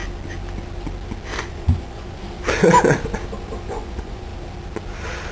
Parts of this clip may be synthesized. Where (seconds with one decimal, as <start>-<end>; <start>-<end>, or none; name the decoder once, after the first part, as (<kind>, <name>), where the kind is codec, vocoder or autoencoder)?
1.4-2.2 (vocoder, Vocos); 3.6-4.3